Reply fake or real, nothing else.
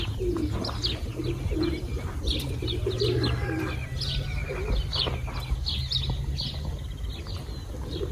real